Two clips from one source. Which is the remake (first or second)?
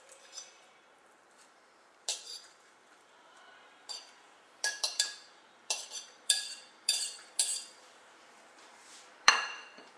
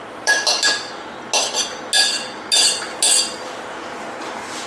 first